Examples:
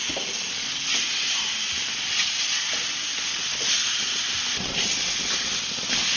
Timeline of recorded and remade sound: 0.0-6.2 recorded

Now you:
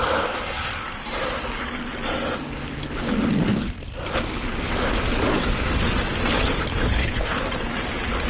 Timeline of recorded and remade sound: 0.0-6.7 recorded; 6.7-7.4 remade; 7.4-8.3 recorded

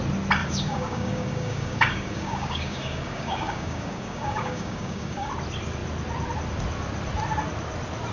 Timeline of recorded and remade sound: 0.0-0.4 recorded; 0.4-5.3 remade; 5.3-8.1 recorded

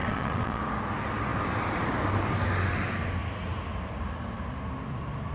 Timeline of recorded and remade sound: 0.0-0.6 remade; 0.6-5.3 recorded